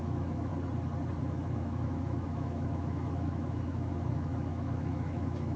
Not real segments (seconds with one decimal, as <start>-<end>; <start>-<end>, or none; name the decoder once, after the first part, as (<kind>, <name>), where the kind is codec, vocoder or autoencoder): 0.0-0.5 (autoencoder, DAC-VAE); 1.2-5.6